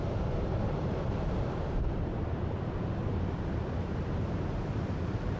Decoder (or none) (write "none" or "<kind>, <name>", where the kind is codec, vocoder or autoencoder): none